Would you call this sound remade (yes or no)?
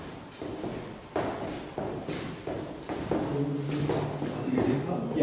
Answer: no